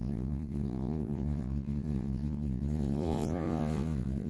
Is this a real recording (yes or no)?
no